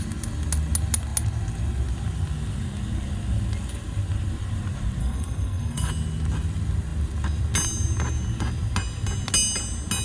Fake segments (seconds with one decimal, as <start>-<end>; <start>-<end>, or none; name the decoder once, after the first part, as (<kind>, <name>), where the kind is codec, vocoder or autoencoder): 5.0-5.9 (codec, SNAC)